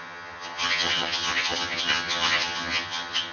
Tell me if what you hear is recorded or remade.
remade